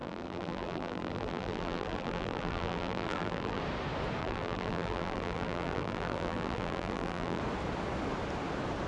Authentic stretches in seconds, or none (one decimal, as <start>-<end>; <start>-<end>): 3.6-4.2; 7.4-8.9